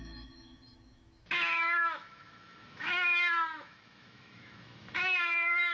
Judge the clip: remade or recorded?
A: remade